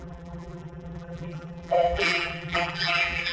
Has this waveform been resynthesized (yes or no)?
yes